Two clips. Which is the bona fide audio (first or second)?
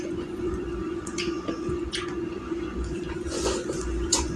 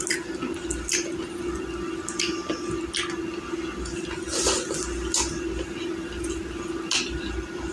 second